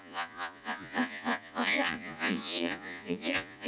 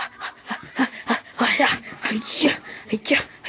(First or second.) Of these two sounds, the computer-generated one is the first